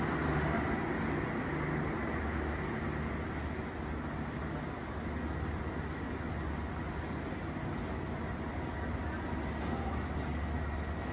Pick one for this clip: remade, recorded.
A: recorded